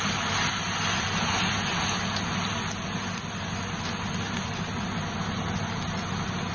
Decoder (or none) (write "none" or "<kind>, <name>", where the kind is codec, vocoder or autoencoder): none